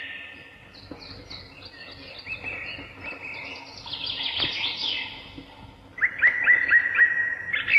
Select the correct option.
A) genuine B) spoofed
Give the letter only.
A